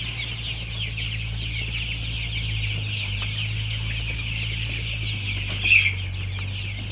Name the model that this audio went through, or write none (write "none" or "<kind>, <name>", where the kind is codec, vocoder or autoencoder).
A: none